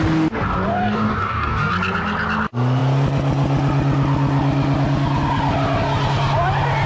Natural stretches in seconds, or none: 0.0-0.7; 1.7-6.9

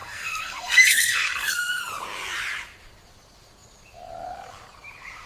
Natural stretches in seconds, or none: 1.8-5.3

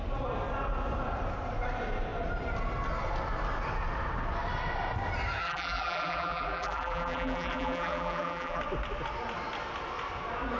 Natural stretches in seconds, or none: 0.0-5.4; 8.6-10.6

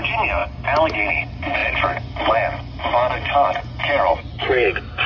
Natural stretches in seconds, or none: 0.0-5.1